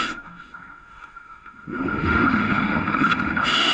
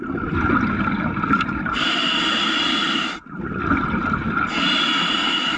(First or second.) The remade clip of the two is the first